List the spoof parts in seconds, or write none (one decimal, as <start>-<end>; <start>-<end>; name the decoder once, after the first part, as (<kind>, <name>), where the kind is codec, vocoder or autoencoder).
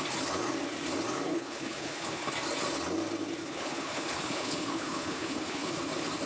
1.3-2.3 (codec, HILCodec); 3.4-5.8